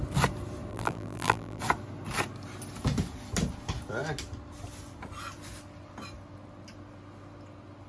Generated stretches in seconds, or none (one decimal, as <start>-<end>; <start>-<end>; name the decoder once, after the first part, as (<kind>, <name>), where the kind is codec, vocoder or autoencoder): 0.7-1.6 (vocoder, BigVGAN v2)